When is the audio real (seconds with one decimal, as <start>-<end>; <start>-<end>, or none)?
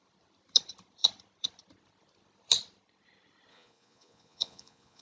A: 0.0-3.5